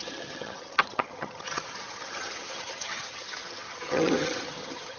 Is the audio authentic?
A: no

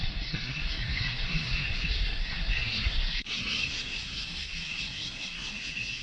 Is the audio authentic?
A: no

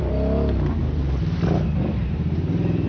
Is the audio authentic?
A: no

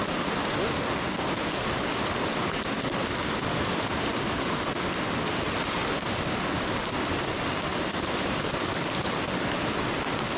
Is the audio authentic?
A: yes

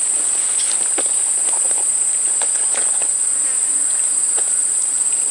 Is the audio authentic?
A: yes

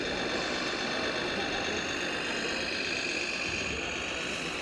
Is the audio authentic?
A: yes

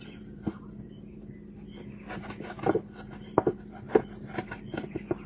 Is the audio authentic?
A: yes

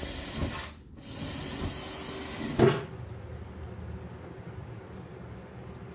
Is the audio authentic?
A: yes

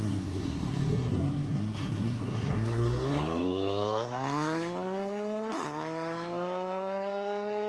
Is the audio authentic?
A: no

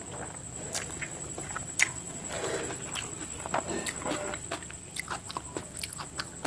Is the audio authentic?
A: yes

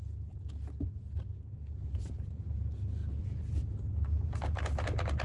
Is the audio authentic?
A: yes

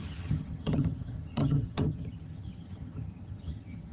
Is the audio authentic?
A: no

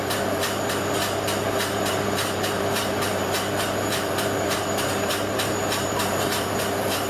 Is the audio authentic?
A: no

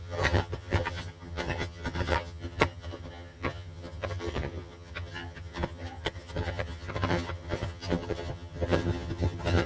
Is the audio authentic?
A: no